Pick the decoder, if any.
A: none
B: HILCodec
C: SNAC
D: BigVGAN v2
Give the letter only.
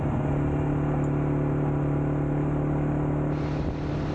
A